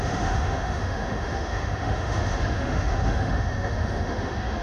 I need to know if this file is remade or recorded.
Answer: remade